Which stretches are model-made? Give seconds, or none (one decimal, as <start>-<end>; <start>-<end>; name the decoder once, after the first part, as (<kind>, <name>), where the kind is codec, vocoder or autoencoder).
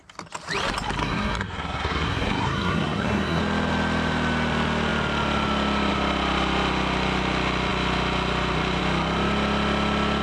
1.0-3.4 (codec, SNAC)